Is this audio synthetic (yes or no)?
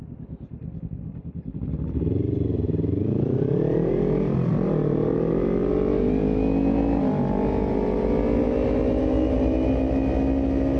no